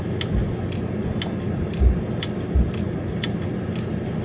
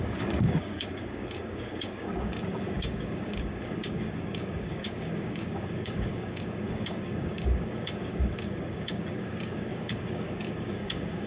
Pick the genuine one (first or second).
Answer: first